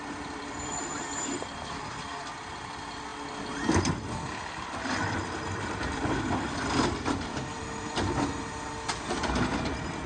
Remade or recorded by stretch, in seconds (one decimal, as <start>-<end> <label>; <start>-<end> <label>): 0.0-3.1 remade; 3.1-4.4 recorded; 4.4-10.1 remade

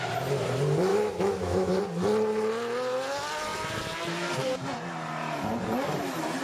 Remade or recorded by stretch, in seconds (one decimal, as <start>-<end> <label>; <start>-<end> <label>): 0.0-0.9 recorded; 0.9-1.8 remade; 1.8-6.4 recorded

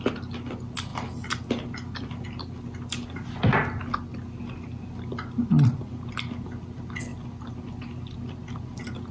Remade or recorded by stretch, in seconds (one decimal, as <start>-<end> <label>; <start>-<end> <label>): 0.0-9.1 recorded

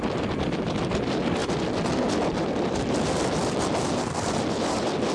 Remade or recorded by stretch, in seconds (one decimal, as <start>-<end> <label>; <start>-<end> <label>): 0.0-5.1 recorded